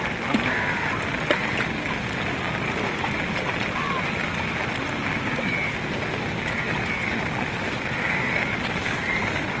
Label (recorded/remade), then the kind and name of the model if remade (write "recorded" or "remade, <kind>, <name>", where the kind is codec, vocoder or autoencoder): recorded